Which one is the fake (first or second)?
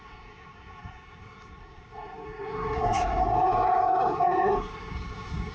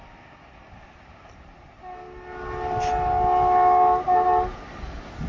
first